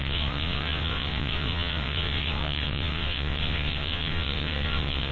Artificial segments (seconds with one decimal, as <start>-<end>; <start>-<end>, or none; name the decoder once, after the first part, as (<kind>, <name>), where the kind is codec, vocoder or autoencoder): 0.0-5.1 (vocoder, WaveNeXt)